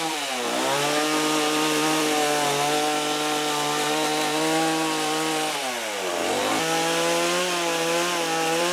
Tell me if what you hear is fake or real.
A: fake